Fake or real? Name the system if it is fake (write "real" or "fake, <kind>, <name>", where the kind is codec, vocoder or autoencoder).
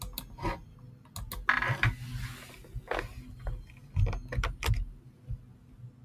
real